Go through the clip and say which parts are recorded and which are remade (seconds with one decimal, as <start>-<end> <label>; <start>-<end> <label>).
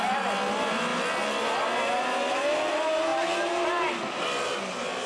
0.0-5.1 recorded